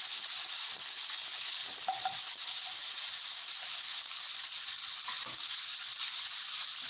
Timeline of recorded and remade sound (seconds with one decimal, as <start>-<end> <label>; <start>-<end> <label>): 0.0-1.3 recorded; 1.3-4.7 remade; 4.7-6.9 recorded